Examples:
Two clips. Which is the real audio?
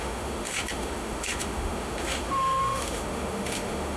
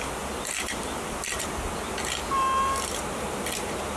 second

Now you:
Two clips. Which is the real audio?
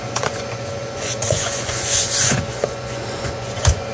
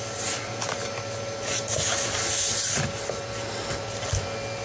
second